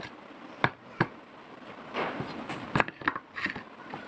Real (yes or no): yes